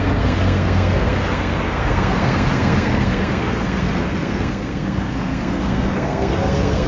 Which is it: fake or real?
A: fake